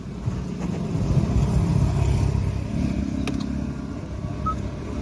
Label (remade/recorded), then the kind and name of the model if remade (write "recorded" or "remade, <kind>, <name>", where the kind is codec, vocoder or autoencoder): recorded